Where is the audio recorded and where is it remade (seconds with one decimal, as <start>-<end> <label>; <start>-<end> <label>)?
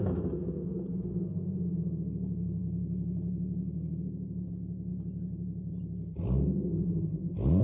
0.0-4.9 remade; 4.9-7.6 recorded